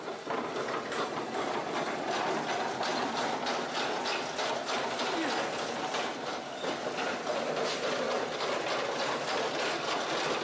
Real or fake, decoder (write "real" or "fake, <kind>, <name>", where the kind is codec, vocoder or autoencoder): real